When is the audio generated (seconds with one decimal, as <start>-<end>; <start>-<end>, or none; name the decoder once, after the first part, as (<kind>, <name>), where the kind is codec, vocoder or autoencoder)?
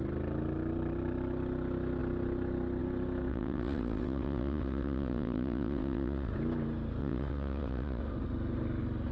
3.3-6.3 (vocoder, WaveNeXt); 7.0-8.0